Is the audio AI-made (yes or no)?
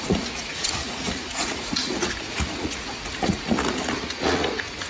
yes